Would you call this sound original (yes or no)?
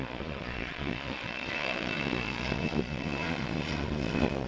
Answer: no